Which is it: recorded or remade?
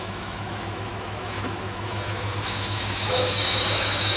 remade